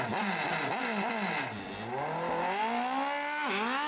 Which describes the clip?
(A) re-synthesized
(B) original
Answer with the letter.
B